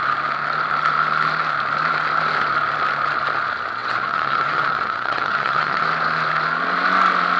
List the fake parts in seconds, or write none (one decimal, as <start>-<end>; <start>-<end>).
3.8-5.8